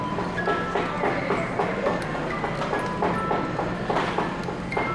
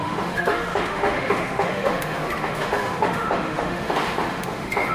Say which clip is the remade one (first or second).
second